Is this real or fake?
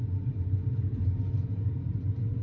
fake